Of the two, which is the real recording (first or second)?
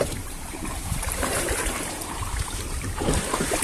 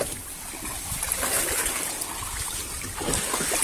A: second